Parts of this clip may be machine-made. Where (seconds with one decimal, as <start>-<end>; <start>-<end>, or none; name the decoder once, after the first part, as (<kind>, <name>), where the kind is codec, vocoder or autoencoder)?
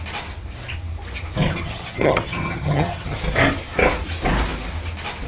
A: 1.5-3.2 (vocoder, HiFi-GAN)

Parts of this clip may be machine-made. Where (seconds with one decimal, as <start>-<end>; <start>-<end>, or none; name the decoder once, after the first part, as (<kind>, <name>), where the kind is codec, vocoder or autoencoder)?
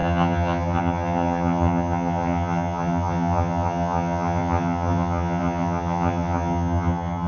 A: 0.0-7.3 (vocoder, HiFi-GAN)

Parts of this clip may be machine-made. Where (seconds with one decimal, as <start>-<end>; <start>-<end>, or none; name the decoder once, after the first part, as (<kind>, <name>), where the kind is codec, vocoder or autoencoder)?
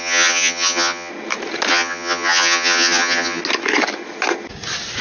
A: 0.0-1.1 (vocoder, HiFi-GAN); 1.7-3.4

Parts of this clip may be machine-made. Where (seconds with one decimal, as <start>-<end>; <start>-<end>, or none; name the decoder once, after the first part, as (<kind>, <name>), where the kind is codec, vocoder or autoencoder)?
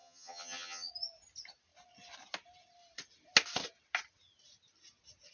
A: 0.0-0.9 (vocoder, HiFi-GAN)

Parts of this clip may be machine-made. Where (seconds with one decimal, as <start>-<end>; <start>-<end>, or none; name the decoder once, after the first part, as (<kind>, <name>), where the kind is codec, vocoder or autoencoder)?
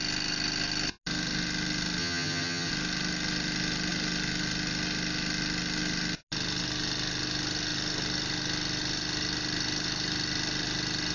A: 2.0-2.7 (vocoder, HiFi-GAN)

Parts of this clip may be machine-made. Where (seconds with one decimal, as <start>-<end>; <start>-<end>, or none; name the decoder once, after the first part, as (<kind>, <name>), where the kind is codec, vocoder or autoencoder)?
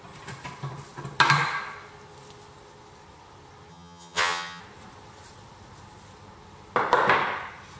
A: 3.7-4.6 (vocoder, HiFi-GAN)